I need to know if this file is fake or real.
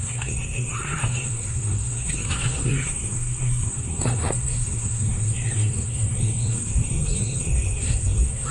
fake